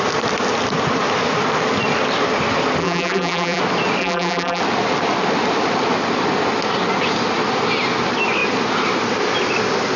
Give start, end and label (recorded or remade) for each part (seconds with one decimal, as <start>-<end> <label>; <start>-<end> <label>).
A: 0.0-2.8 recorded; 2.8-3.6 remade; 3.6-4.0 recorded; 4.0-4.6 remade; 4.6-10.0 recorded